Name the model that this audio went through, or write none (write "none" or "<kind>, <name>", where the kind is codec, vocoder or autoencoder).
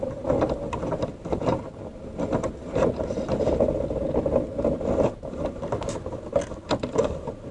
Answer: none